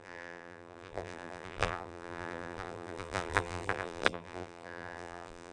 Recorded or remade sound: remade